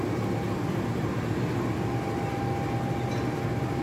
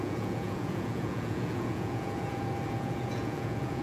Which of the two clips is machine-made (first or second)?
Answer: second